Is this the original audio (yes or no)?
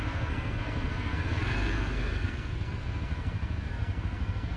no